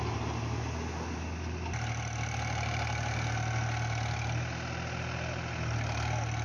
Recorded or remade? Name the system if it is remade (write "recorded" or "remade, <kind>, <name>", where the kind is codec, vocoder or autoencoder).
recorded